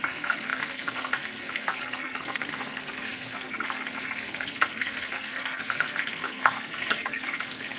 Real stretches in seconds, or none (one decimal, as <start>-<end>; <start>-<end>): none